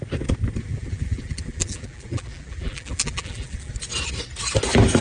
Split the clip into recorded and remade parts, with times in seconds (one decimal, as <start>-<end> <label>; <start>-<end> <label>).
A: 0.0-0.7 recorded; 0.7-3.7 remade; 3.7-5.0 recorded